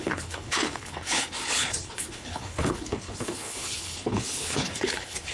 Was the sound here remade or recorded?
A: remade